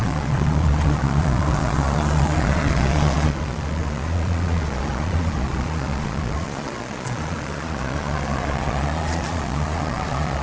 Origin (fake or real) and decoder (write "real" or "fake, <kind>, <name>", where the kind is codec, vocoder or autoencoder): fake, vocoder, Vocos